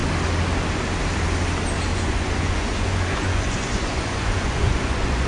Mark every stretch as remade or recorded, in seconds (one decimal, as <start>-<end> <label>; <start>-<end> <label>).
0.0-1.9 recorded; 1.9-5.3 remade